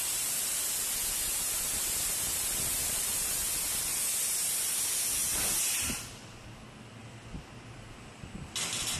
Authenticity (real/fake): real